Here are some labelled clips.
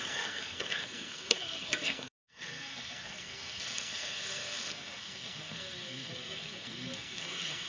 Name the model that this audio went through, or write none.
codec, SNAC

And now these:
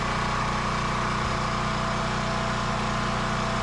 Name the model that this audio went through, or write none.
none